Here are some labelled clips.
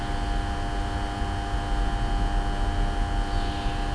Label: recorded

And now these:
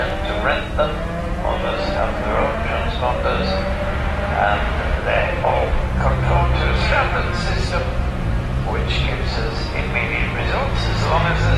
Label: recorded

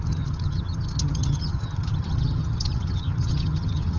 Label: remade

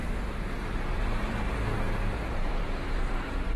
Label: remade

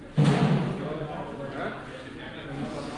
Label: recorded